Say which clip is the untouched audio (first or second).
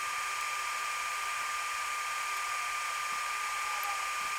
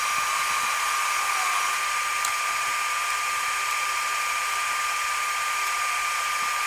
first